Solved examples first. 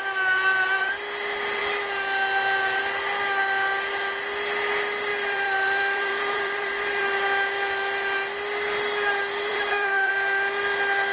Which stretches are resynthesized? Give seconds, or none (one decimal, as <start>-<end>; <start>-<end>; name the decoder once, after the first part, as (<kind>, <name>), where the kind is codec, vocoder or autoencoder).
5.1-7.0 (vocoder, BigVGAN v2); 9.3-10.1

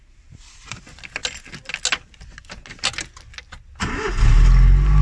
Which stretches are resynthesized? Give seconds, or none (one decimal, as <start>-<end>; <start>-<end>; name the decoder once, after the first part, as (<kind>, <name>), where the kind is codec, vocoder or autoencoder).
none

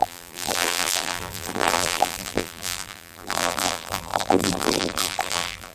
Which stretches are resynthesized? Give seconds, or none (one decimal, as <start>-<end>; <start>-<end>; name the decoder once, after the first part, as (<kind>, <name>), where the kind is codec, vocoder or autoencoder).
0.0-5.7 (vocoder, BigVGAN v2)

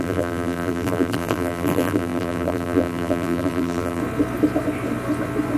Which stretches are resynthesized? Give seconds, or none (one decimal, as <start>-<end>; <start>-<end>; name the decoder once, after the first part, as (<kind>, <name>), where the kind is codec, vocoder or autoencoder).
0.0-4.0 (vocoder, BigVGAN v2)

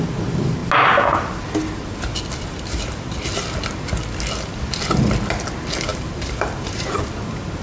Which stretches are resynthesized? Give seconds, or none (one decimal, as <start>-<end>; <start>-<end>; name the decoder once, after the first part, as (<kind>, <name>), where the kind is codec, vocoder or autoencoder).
5.9-7.0 (vocoder, BigVGAN v2)